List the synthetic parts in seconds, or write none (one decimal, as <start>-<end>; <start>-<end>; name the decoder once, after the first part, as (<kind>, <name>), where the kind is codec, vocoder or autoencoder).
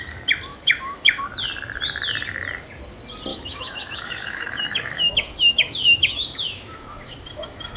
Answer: 0.5-1.2 (autoencoder, DAC-VAE); 3.3-7.8